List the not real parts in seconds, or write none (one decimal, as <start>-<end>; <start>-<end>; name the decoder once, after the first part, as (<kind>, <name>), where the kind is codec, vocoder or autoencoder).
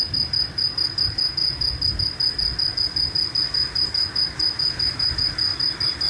none